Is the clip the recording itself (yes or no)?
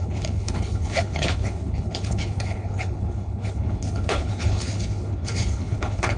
no